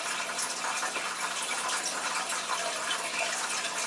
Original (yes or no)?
yes